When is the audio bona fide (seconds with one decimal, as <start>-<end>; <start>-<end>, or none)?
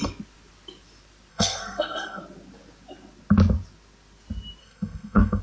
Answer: 0.0-1.3; 2.2-4.6